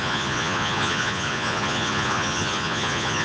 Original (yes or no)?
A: no